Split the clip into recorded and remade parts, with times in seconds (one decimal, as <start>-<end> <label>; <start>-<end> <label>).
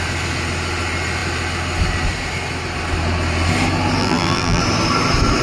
0.0-4.0 recorded; 4.0-4.6 remade; 4.6-5.4 recorded